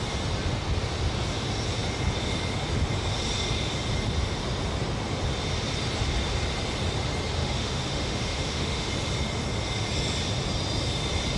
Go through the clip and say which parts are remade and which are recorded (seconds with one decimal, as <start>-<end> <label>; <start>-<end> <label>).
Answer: 0.0-7.4 recorded; 7.4-8.9 remade; 8.9-11.4 recorded